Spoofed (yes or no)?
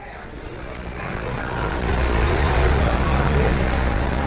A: yes